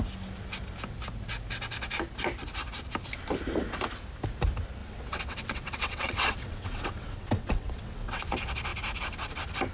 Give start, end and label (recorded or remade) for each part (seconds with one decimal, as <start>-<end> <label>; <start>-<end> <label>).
0.0-4.8 recorded; 4.8-8.2 remade; 8.2-9.7 recorded